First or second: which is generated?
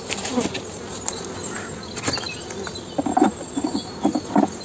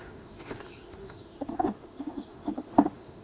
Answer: second